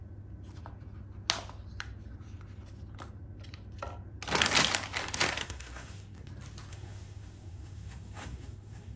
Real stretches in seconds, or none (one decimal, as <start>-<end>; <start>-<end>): 0.0-5.4; 6.3-6.7